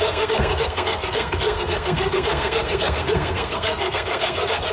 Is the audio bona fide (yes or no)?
no